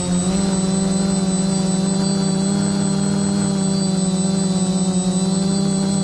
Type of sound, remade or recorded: recorded